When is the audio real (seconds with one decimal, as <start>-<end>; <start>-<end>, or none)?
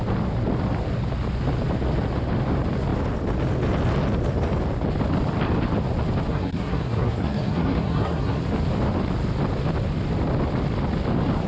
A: 0.0-6.3; 8.4-11.5